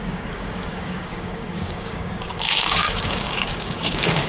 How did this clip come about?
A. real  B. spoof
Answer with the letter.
B